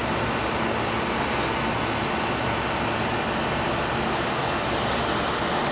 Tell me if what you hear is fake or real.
real